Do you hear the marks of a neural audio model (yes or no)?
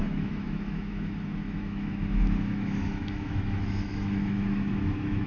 yes